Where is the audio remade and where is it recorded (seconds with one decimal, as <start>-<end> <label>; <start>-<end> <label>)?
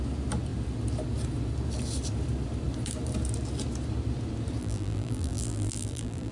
0.0-4.6 recorded; 4.6-6.3 remade